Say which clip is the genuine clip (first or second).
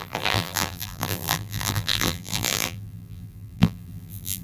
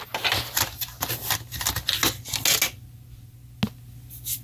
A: second